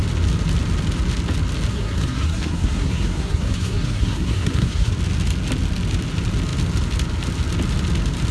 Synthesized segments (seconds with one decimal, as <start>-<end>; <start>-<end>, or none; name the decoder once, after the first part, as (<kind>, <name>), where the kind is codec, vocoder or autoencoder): 1.7-4.9 (codec, SNAC)